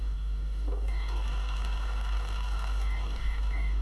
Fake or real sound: fake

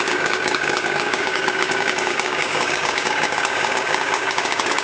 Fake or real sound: fake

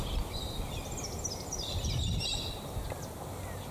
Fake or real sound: real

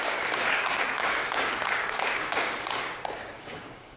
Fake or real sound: fake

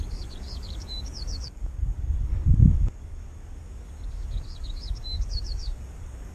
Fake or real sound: fake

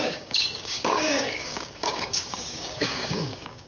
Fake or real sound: fake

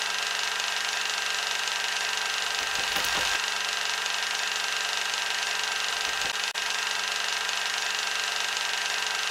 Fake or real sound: real